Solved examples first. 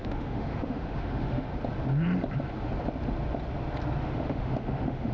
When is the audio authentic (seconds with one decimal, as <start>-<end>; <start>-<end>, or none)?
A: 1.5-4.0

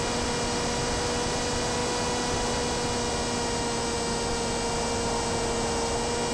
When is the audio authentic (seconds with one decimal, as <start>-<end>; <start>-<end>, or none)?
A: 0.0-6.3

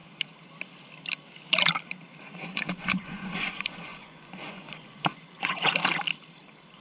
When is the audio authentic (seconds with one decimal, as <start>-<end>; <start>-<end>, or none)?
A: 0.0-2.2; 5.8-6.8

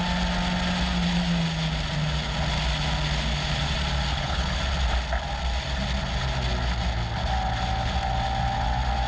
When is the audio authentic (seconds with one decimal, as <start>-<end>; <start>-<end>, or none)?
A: 0.0-4.1; 4.6-9.1

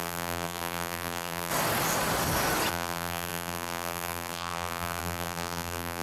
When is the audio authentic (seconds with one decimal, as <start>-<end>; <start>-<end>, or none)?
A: 1.5-2.7